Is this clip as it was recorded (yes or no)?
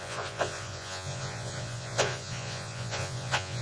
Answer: no